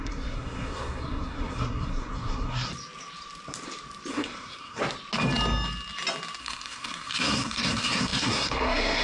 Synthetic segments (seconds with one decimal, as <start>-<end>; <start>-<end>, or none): 0.0-2.7; 4.1-4.8; 6.4-9.0